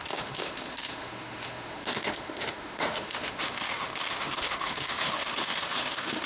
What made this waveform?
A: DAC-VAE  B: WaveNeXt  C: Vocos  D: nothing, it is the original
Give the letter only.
A